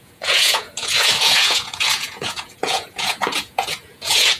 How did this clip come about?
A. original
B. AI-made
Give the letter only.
B